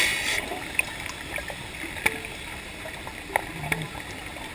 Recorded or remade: recorded